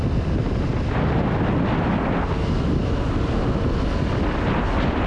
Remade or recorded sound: recorded